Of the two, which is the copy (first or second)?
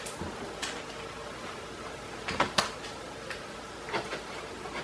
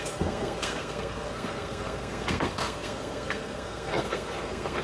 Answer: second